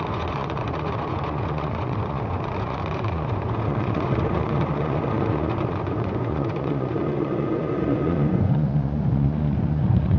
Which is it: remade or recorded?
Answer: remade